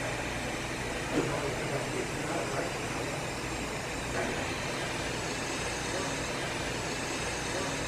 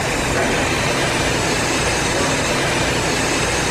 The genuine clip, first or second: first